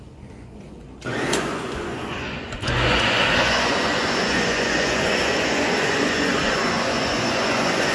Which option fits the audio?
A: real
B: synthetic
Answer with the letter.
B